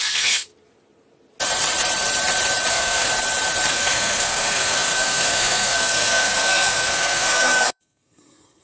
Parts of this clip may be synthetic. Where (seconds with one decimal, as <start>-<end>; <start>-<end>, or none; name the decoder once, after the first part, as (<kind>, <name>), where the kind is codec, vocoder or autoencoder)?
0.0-0.5 (codec, SNAC); 2.7-3.1; 3.7-8.6